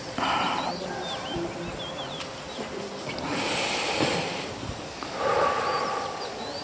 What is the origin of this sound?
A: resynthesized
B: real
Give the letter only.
B